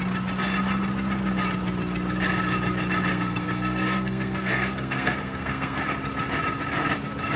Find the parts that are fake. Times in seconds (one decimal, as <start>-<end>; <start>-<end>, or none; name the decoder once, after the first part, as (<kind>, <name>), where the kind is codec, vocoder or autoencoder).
3.1-5.8 (codec, SNAC)